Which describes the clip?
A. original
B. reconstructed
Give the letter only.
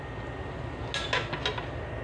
A